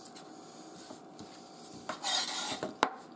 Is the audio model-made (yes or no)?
no